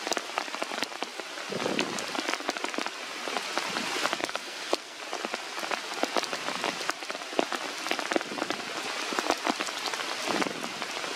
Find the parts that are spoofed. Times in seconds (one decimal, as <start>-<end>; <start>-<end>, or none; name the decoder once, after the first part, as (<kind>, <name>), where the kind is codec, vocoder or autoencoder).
4.2-5.0 (codec, SNAC)